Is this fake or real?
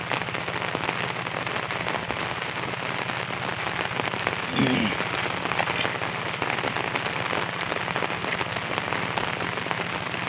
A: real